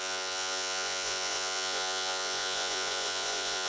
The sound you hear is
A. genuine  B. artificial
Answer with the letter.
B